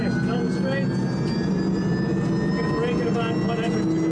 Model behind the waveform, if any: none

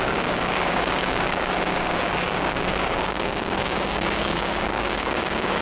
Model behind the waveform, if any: codec, DAC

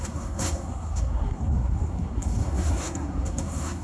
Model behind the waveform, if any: codec, SNAC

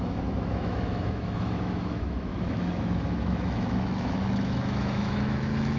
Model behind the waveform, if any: autoencoder, DAC-VAE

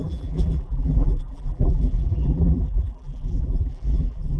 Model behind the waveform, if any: vocoder, BigVGAN v2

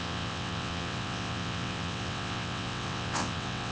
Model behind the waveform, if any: vocoder, WaveNeXt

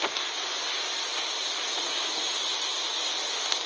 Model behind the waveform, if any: none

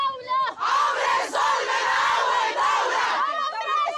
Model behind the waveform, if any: none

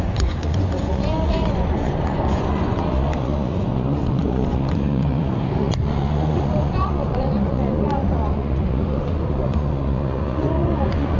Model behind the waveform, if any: vocoder, Vocos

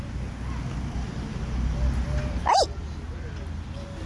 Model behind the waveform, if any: none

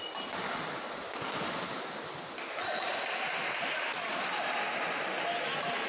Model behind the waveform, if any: none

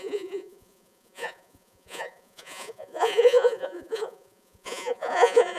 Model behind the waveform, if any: vocoder, Vocos